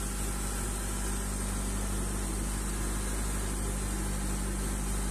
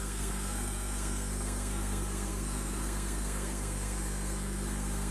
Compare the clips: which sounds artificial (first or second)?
second